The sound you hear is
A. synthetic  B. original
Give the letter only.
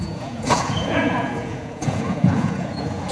A